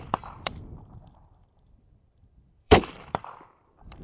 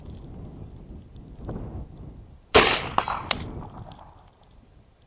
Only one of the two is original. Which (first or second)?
second